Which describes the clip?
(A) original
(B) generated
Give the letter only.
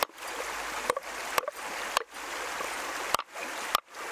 A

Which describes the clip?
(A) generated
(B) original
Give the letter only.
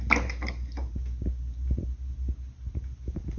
B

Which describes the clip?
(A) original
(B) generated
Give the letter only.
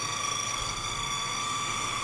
B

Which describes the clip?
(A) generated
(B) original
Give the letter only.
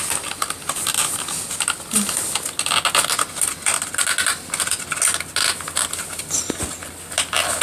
B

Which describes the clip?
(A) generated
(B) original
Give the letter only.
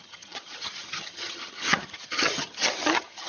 A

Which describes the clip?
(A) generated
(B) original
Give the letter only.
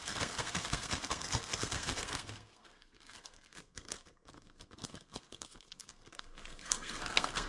A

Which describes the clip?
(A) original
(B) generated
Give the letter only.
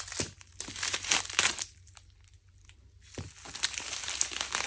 A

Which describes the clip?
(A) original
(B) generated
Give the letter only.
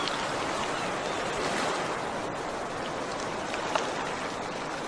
A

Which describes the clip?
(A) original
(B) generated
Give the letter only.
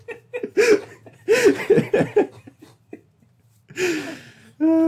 A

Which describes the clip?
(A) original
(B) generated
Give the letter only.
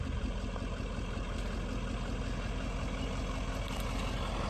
A